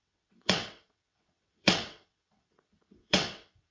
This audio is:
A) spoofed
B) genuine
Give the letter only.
A